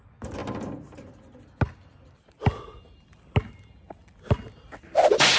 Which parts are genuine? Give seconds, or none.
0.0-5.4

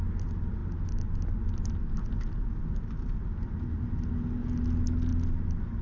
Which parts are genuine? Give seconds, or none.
0.0-5.8

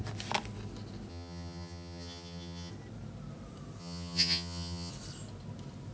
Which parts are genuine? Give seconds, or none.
0.0-1.1; 2.7-3.8; 4.9-5.9

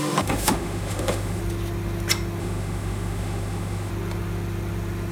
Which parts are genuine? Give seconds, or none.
1.4-2.4; 3.9-5.1

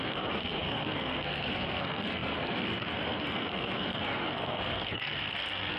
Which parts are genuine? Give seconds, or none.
none

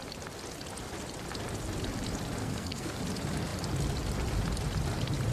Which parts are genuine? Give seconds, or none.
0.0-2.4; 3.0-5.3